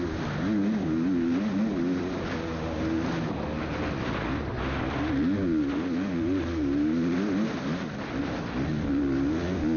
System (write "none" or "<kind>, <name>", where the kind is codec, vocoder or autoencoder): none